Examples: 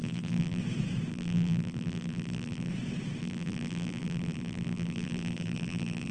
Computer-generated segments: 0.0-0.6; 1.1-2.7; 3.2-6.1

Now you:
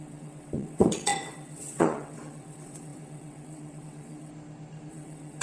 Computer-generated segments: 0.0-4.3; 4.9-5.4

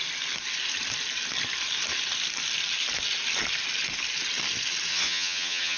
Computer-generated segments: 4.9-5.8

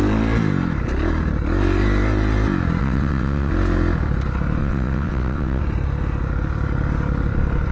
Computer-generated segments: 2.8-3.5; 4.6-5.6

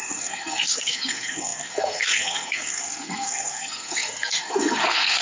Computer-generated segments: 0.0-5.2